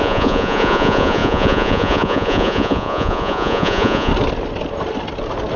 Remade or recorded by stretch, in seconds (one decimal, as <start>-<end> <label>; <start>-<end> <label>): 0.0-4.1 remade; 4.1-5.6 recorded